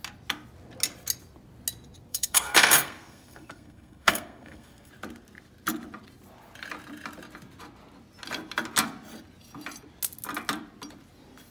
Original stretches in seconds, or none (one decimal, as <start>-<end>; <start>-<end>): 0.0-2.1; 4.9-11.5